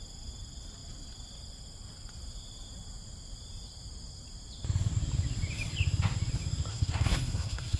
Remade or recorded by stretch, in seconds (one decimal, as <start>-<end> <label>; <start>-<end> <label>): 0.0-6.7 recorded; 6.7-7.8 remade

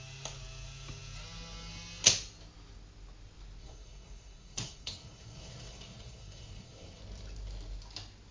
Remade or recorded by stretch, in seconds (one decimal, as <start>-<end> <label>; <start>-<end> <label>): 0.0-3.6 recorded; 3.6-7.0 remade; 7.0-8.3 recorded